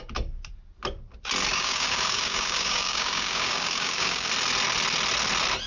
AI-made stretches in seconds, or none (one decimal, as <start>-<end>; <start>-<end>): 1.5-4.3